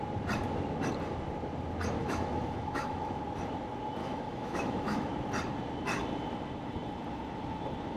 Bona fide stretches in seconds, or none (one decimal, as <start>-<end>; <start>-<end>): 0.0-2.0; 3.2-4.0; 5.1-8.0